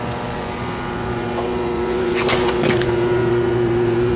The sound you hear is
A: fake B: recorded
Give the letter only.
A